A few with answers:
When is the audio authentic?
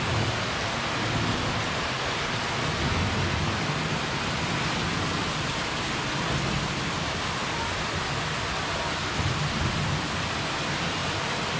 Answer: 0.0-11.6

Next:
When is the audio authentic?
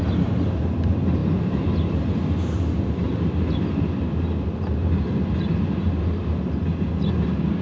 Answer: 0.0-7.6